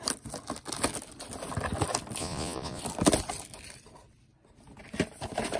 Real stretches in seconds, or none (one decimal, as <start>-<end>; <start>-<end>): 0.0-2.2; 2.8-5.6